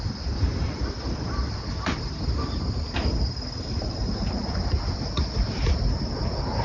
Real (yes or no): yes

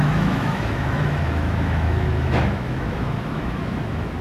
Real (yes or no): no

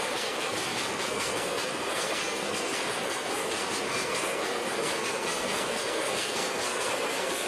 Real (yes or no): no